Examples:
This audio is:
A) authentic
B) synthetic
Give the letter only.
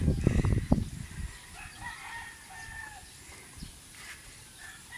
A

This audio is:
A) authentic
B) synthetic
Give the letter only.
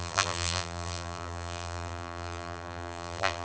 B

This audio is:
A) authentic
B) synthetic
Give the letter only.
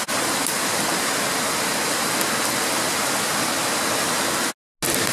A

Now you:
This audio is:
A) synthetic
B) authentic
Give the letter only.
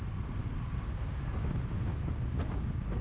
B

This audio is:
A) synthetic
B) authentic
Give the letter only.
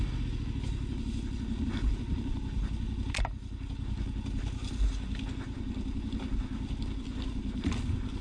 B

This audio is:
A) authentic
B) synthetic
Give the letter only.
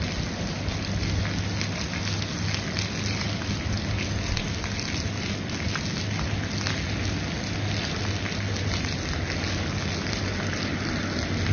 A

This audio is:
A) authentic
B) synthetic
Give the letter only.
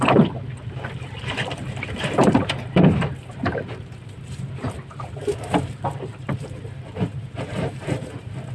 B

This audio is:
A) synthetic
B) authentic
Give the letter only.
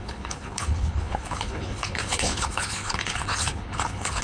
A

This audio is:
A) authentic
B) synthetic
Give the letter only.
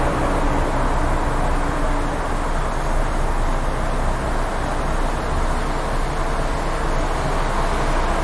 A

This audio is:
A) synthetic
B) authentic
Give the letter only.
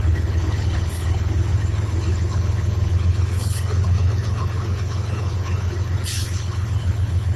A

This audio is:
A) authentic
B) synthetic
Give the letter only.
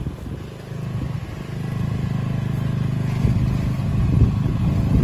A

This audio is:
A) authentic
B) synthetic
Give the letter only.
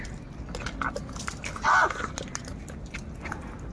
A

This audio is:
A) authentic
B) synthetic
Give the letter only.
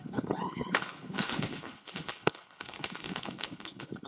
B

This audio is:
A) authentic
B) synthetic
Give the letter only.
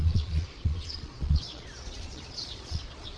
B